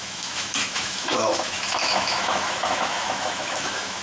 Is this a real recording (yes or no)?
no